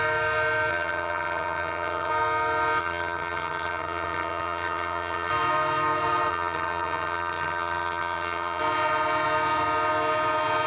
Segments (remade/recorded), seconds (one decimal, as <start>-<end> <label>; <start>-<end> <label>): 0.0-0.7 recorded; 0.7-2.1 remade; 2.1-2.8 recorded; 2.8-5.3 remade; 5.3-6.3 recorded; 6.3-8.6 remade; 8.6-10.7 recorded